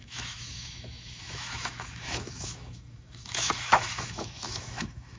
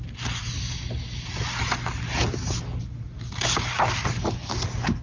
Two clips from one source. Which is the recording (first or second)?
second